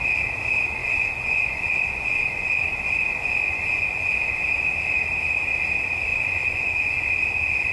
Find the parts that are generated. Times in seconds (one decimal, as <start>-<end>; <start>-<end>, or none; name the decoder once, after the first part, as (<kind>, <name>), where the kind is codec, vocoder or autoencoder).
0.8-4.4 (vocoder, Vocos); 6.1-7.1